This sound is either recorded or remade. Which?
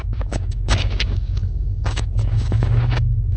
remade